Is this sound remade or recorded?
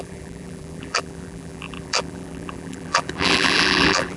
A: remade